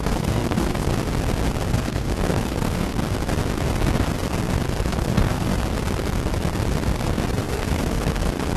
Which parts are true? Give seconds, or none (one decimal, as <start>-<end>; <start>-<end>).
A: 0.9-1.7; 2.9-4.9; 5.5-7.4